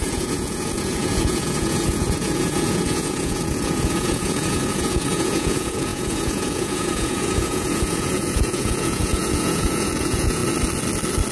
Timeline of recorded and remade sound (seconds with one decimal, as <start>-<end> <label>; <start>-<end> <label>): 0.0-10.4 remade; 10.4-11.3 recorded